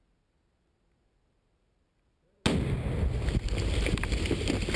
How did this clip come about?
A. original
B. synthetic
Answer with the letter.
A